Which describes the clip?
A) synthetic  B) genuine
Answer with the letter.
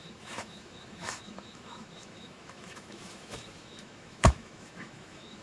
A